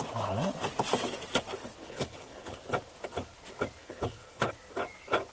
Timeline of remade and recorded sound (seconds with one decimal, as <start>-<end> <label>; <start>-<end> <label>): 0.0-1.8 recorded; 1.8-2.6 remade; 2.6-3.8 recorded; 3.8-4.5 remade; 4.5-5.3 recorded